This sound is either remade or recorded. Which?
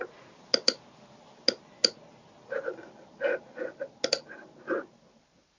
recorded